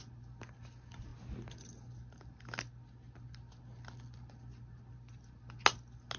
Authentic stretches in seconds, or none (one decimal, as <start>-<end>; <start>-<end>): 0.0-6.2